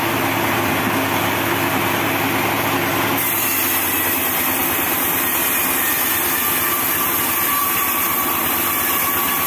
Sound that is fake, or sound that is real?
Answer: real